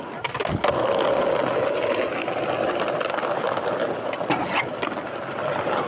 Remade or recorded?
recorded